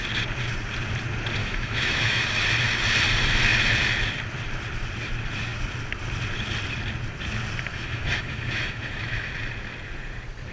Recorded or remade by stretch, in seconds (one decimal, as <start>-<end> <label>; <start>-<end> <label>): 0.0-1.4 recorded; 1.4-2.2 remade; 2.2-7.7 recorded; 7.7-9.3 remade; 9.3-10.5 recorded